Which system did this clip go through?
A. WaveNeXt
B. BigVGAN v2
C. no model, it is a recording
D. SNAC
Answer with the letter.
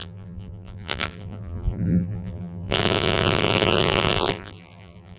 B